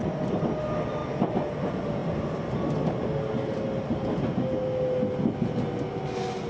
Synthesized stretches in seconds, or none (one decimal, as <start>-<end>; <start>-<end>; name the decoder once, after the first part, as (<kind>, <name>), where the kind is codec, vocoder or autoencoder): none